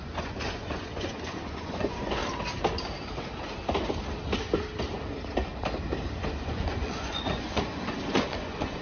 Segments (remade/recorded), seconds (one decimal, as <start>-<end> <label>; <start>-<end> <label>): 0.0-2.2 remade; 2.2-6.4 recorded; 6.4-8.8 remade